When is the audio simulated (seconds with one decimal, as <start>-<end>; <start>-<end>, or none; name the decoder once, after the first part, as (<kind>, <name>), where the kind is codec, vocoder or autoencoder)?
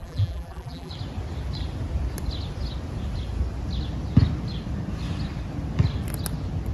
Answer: 0.0-0.9 (vocoder, BigVGAN v2)